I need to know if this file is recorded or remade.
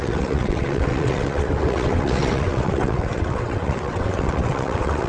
remade